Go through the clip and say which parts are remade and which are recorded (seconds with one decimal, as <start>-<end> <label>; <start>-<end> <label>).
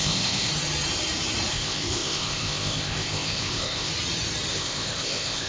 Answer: 0.0-0.5 remade; 0.5-1.5 recorded; 1.5-3.9 remade; 3.9-4.5 recorded; 4.5-5.5 remade